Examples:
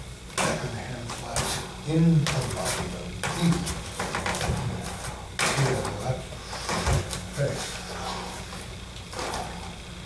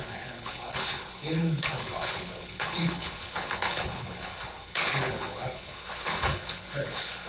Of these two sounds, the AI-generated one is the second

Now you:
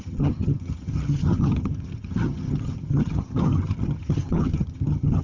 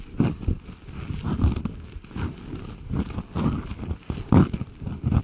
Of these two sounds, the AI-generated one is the first